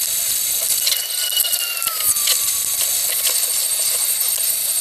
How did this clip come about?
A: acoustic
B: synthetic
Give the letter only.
B